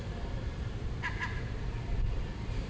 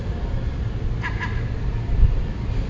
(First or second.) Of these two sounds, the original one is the second